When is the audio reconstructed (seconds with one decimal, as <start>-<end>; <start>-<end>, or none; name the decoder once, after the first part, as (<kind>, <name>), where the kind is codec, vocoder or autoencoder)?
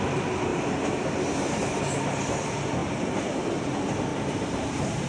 0.5-1.8 (vocoder, BigVGAN v2); 4.1-5.1